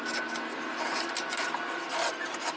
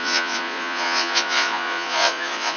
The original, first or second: first